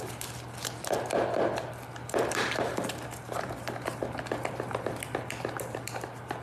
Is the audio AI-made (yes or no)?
no